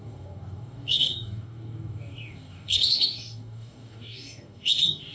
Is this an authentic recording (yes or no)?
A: no